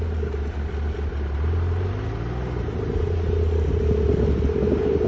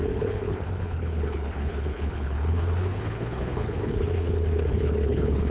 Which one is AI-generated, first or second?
second